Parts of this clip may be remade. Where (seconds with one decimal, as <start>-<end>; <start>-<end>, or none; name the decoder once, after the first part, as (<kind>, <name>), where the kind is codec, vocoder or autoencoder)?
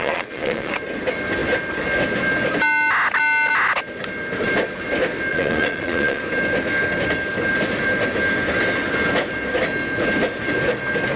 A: 0.0-0.7 (vocoder, Vocos); 5.3-6.2